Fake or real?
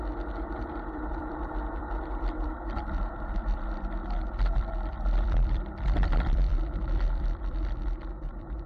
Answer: fake